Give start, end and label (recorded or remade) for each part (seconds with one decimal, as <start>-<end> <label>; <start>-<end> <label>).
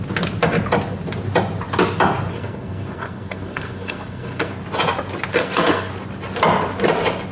0.0-2.3 recorded; 2.3-4.5 remade; 4.5-5.3 recorded; 5.3-5.9 remade; 5.9-7.3 recorded